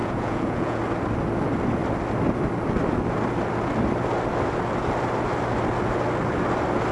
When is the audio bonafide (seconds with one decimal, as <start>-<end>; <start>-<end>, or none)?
0.8-6.9